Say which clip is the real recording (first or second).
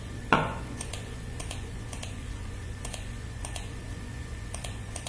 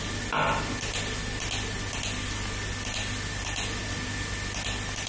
second